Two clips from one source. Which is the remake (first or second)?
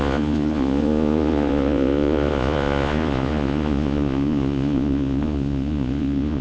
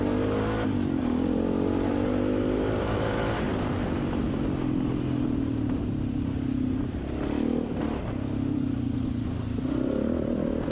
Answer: first